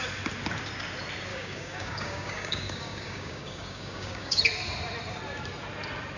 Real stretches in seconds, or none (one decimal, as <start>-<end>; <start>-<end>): 0.0-1.3; 4.4-6.2